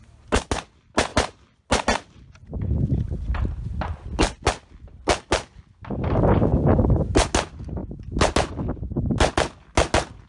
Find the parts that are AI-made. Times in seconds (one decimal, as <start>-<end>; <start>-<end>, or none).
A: none